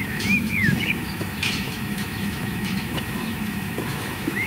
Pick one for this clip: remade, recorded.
remade